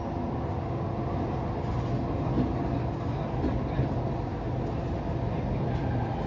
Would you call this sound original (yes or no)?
yes